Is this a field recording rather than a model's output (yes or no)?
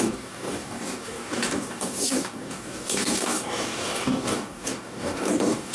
no